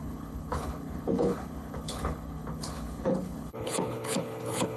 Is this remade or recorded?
remade